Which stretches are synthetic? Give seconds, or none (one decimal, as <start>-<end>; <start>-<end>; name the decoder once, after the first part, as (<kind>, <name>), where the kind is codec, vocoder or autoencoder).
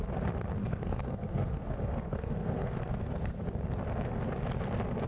0.6-3.4 (codec, SNAC)